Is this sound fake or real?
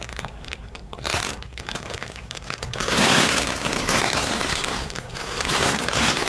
fake